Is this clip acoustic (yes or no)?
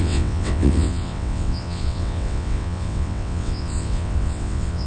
no